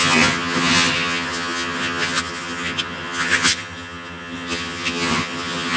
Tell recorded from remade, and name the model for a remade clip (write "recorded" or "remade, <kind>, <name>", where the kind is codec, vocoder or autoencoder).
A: remade, vocoder, HiFi-GAN